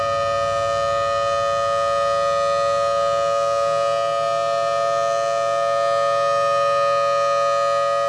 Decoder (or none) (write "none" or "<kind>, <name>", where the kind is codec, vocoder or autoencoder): none